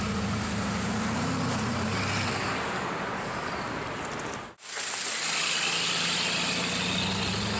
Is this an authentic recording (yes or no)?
yes